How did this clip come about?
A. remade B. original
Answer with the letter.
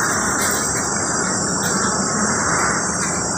B